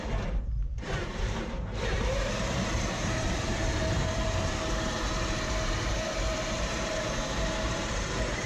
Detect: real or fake fake